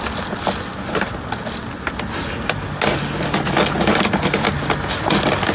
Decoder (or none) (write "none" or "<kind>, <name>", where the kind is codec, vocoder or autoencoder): none